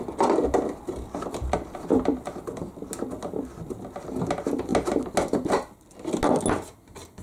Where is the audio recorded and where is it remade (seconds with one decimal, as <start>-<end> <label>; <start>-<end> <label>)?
0.0-7.2 recorded